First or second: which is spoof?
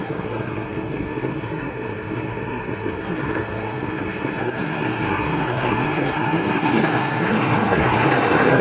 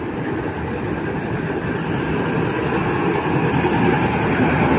first